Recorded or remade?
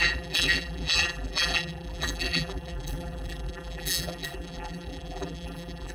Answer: remade